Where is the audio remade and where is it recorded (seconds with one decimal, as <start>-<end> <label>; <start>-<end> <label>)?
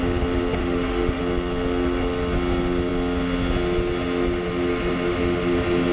0.0-0.6 recorded; 0.6-1.2 remade; 1.2-5.9 recorded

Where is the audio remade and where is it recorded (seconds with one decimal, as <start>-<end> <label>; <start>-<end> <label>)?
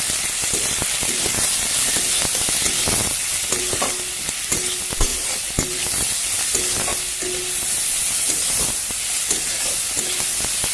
0.0-10.7 recorded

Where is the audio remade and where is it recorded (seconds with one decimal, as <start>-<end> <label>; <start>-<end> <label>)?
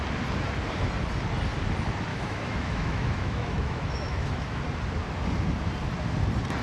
0.0-2.1 recorded; 2.1-4.6 remade; 4.6-6.6 recorded